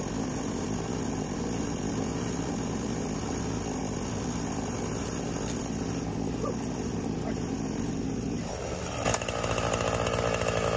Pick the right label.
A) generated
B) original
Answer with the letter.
B